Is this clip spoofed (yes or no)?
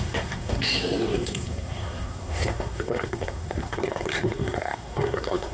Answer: yes